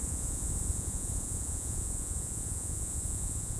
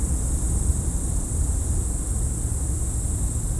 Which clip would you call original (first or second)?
second